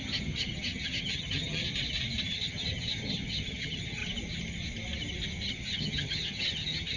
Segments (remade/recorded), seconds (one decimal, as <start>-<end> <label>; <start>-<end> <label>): 0.0-1.6 remade; 1.6-2.2 recorded; 2.2-4.0 remade; 4.0-5.5 recorded; 5.5-7.0 remade